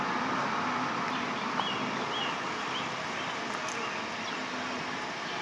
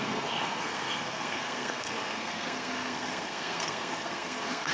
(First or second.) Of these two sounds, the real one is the first